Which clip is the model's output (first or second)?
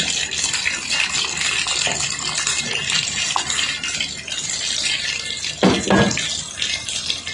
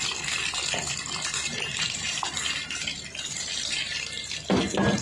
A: second